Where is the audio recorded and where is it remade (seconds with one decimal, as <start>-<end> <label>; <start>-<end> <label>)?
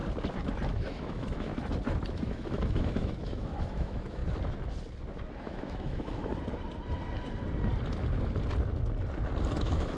0.0-0.7 recorded; 0.7-1.5 remade; 1.5-2.1 recorded; 2.1-4.2 remade; 4.2-5.5 recorded; 5.5-6.3 remade; 6.3-9.6 recorded; 9.6-10.0 remade